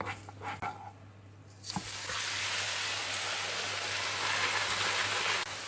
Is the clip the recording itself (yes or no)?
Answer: yes